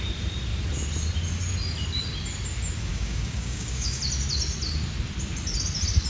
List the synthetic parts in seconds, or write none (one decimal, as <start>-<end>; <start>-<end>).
2.9-4.0